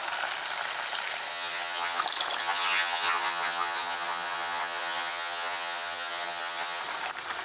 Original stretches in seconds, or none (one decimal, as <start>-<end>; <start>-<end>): 0.0-1.3; 2.0-2.4; 6.8-7.4